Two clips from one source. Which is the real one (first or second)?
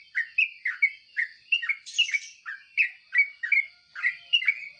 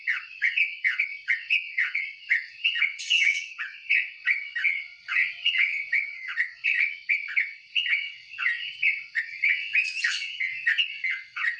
first